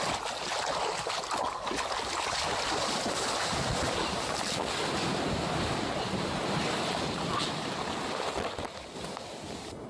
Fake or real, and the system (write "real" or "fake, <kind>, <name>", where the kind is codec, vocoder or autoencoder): real